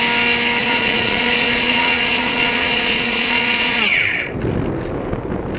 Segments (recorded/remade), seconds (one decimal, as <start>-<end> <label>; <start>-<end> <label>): 0.0-0.6 recorded; 0.6-4.0 remade; 4.0-5.6 recorded